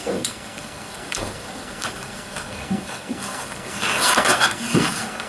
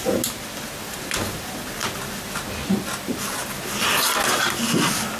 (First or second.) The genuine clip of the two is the second